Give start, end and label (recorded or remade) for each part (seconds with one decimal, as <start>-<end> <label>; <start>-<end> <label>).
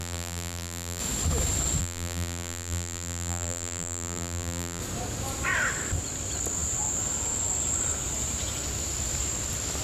0.0-1.0 remade; 1.0-1.8 recorded; 1.8-4.8 remade; 4.8-9.8 recorded